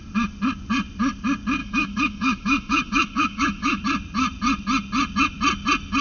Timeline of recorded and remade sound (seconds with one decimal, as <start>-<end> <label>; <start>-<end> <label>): 0.0-1.6 recorded; 1.6-3.8 remade; 3.8-6.0 recorded